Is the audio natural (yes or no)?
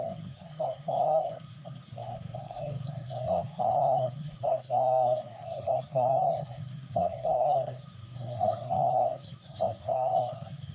no